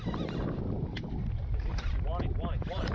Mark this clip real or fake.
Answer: real